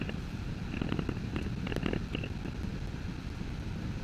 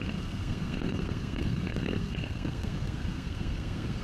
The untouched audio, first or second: first